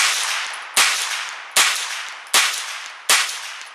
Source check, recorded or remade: recorded